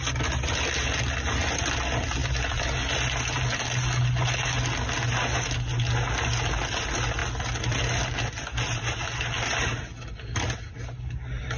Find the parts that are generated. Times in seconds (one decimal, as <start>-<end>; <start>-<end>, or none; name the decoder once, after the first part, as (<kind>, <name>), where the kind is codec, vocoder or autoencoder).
none